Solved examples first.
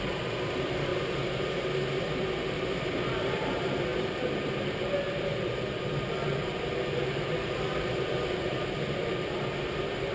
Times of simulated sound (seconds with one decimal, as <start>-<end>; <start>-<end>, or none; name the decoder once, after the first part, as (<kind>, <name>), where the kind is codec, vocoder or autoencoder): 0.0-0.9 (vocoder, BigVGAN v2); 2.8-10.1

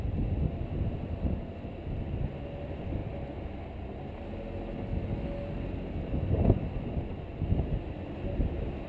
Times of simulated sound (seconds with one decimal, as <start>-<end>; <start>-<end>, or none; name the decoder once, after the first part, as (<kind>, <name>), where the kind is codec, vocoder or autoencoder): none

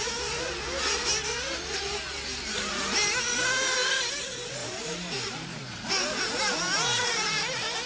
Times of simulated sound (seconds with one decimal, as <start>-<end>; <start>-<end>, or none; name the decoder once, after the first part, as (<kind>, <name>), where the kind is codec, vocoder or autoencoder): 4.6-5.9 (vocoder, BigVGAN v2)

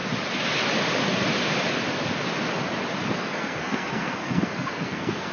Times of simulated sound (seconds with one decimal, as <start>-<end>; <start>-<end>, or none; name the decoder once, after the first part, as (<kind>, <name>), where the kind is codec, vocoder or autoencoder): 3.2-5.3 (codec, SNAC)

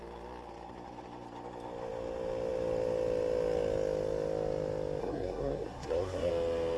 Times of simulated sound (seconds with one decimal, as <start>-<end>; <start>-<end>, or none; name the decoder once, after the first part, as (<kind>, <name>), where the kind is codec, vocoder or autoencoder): 5.0-6.3 (codec, SNAC)